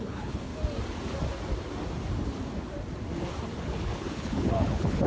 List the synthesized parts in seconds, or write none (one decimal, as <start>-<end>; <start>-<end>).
0.0-0.5; 3.6-5.1